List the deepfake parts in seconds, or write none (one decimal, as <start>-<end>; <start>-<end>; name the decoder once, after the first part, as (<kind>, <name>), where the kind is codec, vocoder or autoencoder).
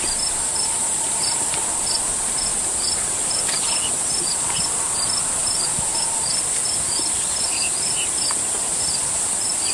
0.0-5.9 (vocoder, BigVGAN v2); 8.5-9.7